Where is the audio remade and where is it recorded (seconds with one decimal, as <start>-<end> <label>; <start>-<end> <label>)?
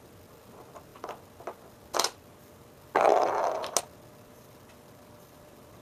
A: 0.0-5.8 recorded